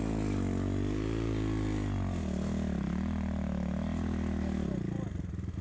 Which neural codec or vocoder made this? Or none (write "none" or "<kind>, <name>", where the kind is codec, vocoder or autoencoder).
none